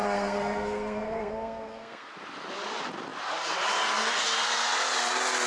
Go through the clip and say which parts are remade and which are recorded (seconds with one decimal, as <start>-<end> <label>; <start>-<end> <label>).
0.0-2.1 remade; 2.1-5.5 recorded